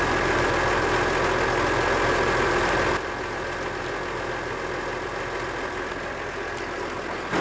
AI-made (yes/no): no